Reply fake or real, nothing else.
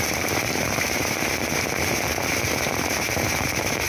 fake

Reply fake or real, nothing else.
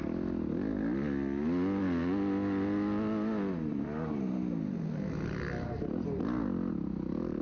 real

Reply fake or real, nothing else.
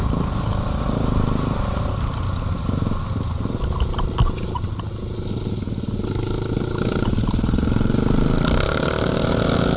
real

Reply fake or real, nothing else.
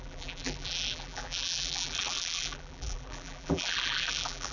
fake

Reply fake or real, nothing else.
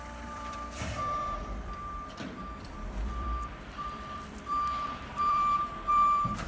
fake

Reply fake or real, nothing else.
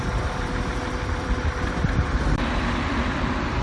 fake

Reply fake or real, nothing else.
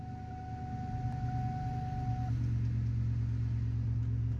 real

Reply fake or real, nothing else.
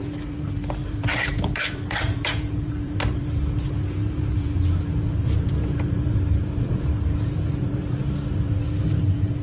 fake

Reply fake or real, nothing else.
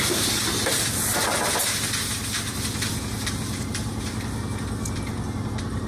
real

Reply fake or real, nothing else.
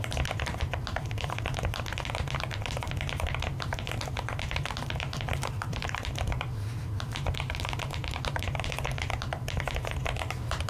fake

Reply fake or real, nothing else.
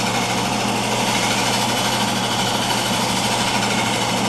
real